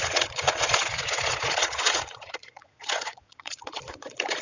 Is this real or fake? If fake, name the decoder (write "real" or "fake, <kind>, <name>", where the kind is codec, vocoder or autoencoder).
fake, vocoder, Vocos